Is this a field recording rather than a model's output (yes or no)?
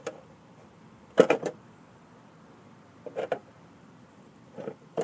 no